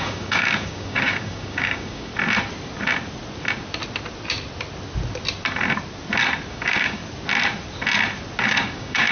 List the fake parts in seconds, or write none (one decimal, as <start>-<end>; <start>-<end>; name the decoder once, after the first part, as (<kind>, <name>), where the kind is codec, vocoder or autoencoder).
0.0-2.1 (codec, DAC); 6.5-7.0; 8.4-9.1